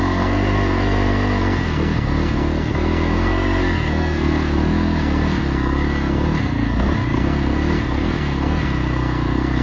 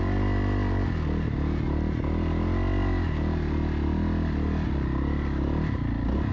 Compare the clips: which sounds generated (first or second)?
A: first